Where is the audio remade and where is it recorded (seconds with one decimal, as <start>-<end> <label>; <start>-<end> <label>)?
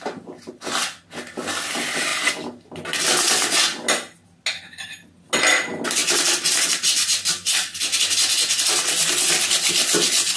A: 0.0-10.4 recorded